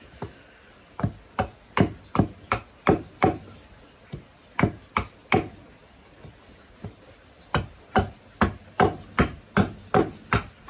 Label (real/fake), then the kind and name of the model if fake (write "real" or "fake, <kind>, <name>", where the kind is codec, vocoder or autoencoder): real